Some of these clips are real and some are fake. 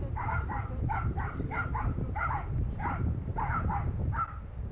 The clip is real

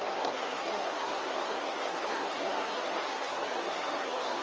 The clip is fake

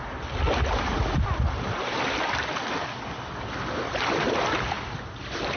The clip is real